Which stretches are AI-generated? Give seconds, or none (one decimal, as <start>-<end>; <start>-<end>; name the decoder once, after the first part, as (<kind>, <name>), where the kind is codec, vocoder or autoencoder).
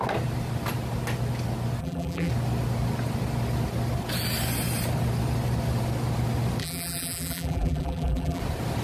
1.8-2.3 (vocoder, BigVGAN v2); 6.6-8.4